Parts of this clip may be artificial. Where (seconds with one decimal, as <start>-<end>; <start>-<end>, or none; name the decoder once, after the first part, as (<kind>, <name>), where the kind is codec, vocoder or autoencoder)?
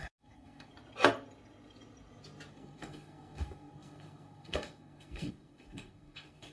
0.0-0.7 (codec, SNAC); 2.5-6.5